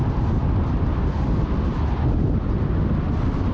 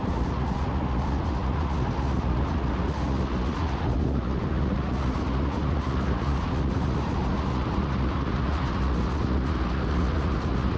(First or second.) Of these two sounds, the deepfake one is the second